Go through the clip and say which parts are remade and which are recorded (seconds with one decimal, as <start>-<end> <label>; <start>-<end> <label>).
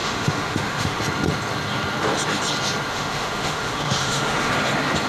0.0-1.0 remade; 1.0-2.9 recorded; 2.9-4.5 remade; 4.5-5.1 recorded